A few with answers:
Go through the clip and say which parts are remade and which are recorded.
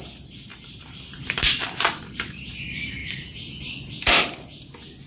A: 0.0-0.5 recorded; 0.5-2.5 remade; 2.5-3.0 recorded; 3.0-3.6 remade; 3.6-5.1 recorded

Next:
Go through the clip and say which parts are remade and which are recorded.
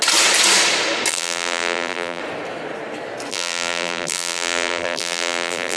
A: 0.0-1.1 recorded; 1.1-2.2 remade; 2.2-3.3 recorded; 3.3-5.8 remade